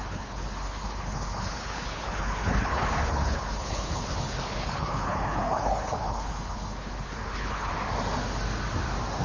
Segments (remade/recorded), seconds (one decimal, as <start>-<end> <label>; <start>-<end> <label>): 0.0-7.7 remade; 7.7-9.2 recorded